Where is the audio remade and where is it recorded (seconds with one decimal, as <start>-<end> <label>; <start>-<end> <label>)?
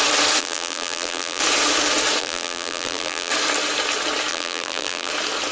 0.0-0.4 recorded; 0.4-1.4 remade; 1.4-2.2 recorded; 2.2-3.3 remade; 3.3-4.3 recorded; 4.3-5.1 remade; 5.1-5.5 recorded